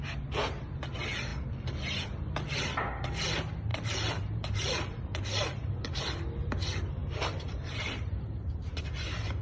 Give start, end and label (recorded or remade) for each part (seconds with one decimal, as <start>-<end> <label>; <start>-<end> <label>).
0.0-3.7 recorded; 3.7-6.0 remade; 6.0-7.0 recorded; 7.0-8.8 remade; 8.8-9.4 recorded